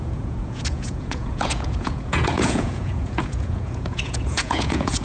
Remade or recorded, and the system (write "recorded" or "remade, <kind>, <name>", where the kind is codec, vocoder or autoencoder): remade, vocoder, Vocos